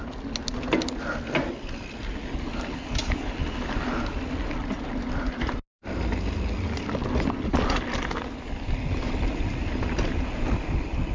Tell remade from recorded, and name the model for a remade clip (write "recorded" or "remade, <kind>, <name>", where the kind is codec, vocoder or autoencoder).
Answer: recorded